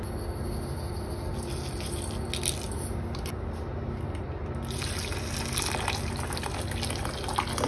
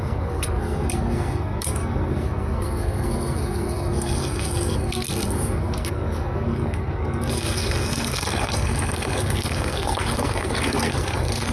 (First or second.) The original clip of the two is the first